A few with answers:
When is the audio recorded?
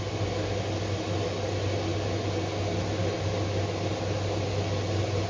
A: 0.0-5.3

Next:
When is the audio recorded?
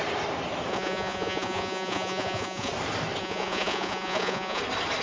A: 0.0-0.7; 2.7-3.2; 4.6-5.0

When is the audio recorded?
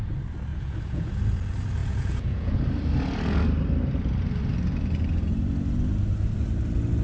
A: 0.0-0.5; 1.1-1.8; 2.6-7.0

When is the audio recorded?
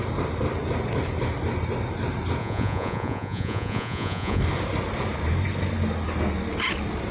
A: 0.0-2.4; 4.4-7.1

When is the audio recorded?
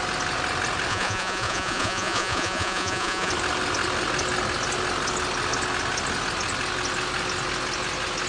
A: 0.0-0.9; 3.3-8.3